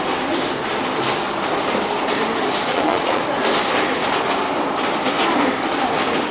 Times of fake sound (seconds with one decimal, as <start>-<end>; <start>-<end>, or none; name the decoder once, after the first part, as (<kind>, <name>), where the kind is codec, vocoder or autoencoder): 2.7-3.2 (vocoder, Vocos)